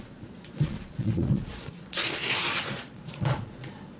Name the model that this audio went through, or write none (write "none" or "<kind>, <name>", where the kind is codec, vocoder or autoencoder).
vocoder, Vocos